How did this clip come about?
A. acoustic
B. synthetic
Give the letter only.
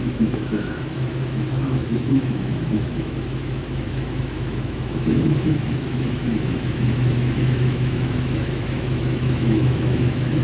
B